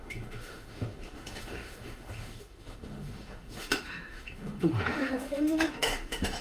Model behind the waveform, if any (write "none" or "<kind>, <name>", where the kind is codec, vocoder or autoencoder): autoencoder, DAC-VAE